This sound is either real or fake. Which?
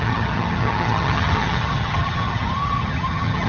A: fake